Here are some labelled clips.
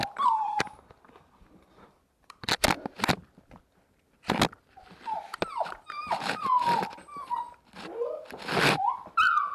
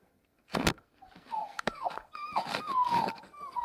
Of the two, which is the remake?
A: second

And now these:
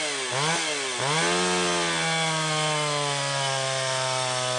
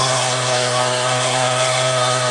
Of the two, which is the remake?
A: second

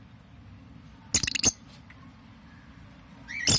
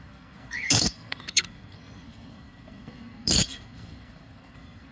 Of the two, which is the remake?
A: second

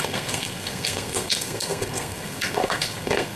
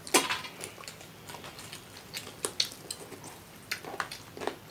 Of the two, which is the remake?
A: first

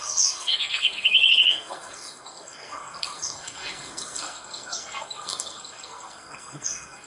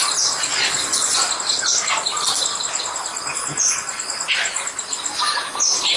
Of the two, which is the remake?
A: first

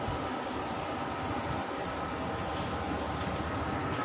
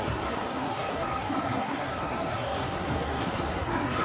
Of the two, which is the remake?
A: second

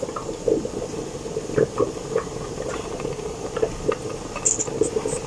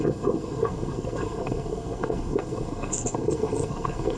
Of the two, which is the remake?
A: second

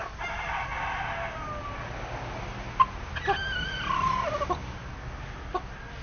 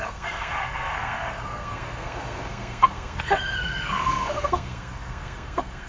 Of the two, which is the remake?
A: second